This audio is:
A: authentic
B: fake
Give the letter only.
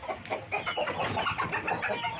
A